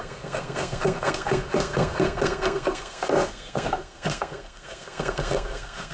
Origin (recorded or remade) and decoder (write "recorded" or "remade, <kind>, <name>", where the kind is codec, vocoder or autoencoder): remade, codec, SNAC